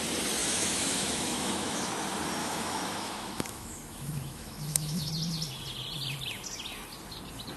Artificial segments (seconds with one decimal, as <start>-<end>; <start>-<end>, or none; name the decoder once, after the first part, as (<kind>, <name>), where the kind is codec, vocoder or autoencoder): 0.4-1.9 (autoencoder, DAC-VAE); 2.4-5.1